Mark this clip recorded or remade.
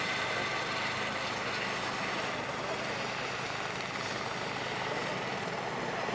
recorded